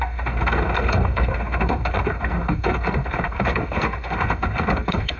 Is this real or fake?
fake